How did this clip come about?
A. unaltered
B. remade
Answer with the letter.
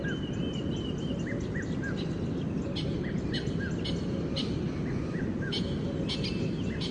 A